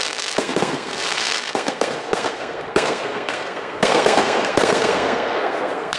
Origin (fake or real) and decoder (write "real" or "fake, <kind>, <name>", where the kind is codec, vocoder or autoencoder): fake, codec, SNAC